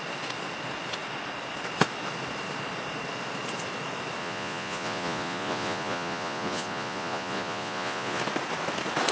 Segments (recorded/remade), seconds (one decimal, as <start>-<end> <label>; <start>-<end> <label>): 0.0-4.2 recorded; 4.2-8.2 remade; 8.2-9.1 recorded

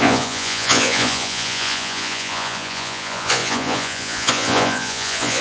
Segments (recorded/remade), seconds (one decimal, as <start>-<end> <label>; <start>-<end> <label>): 0.0-5.4 remade

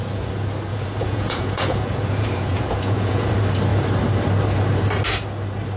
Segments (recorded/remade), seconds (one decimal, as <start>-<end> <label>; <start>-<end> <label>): 0.0-0.7 recorded; 0.7-3.3 remade; 3.3-5.8 recorded

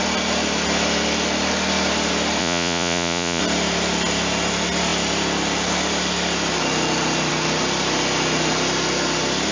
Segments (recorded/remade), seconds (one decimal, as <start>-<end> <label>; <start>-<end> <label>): 0.0-2.4 recorded; 2.4-3.4 remade; 3.4-9.5 recorded

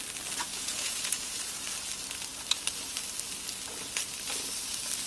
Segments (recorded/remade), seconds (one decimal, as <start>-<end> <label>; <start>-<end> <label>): 0.0-0.5 recorded; 0.5-1.5 remade; 1.5-5.1 recorded

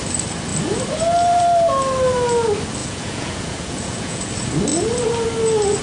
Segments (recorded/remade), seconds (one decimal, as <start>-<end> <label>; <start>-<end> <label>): 0.0-2.8 recorded; 2.8-4.3 remade; 4.3-5.8 recorded